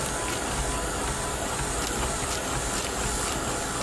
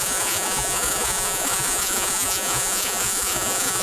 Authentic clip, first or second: first